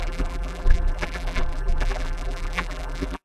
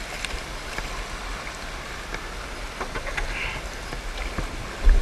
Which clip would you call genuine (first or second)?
second